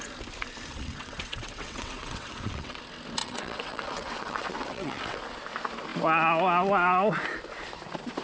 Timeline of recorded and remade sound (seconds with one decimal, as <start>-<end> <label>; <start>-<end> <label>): 0.0-0.7 recorded; 0.7-2.8 remade; 2.8-3.2 recorded; 3.2-5.2 remade; 5.2-8.2 recorded